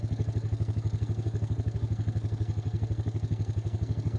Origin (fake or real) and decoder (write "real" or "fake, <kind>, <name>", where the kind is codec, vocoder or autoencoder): fake, codec, SNAC